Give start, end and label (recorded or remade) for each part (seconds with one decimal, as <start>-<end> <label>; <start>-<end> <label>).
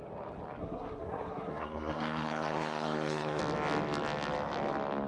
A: 0.0-0.6 recorded; 0.6-3.4 remade; 3.4-5.1 recorded